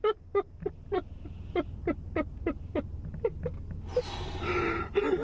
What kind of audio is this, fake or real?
real